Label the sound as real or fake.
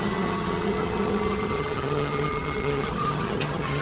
fake